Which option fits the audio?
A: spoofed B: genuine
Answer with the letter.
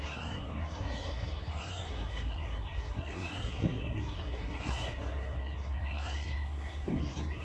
A